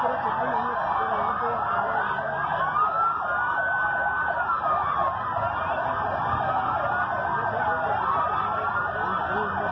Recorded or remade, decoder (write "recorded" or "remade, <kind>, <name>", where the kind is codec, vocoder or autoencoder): recorded